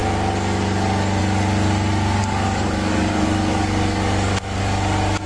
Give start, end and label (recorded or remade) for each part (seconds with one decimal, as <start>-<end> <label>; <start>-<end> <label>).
0.0-2.2 recorded; 2.2-4.6 remade; 4.6-5.3 recorded